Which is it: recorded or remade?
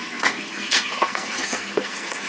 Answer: remade